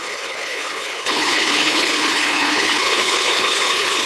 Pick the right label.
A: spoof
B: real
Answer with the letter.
A